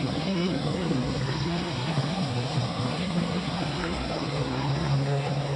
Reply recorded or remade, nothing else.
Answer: remade